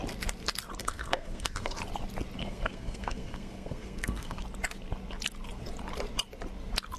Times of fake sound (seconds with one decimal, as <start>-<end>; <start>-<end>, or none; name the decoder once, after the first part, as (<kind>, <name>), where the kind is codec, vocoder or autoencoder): 0.8-1.8 (codec, SNAC); 2.4-4.4